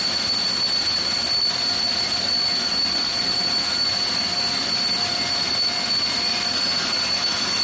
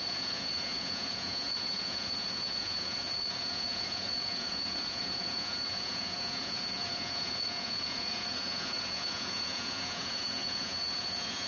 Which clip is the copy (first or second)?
second